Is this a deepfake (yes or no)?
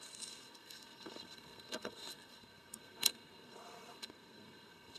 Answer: yes